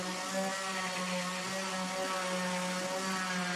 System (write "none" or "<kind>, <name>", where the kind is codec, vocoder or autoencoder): none